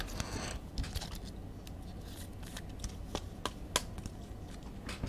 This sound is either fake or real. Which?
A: real